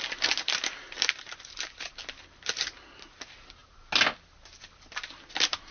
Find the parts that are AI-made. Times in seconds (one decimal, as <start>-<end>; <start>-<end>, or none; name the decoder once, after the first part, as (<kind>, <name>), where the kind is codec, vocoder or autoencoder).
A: none